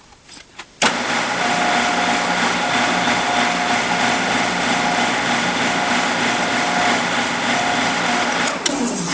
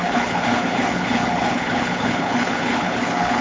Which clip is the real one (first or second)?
first